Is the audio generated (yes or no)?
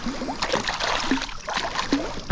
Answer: no